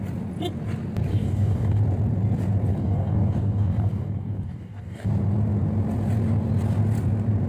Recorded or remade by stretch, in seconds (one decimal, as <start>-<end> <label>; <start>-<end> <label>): 0.0-1.1 recorded; 1.1-1.8 remade; 1.8-2.7 recorded; 2.7-5.1 remade; 5.1-7.5 recorded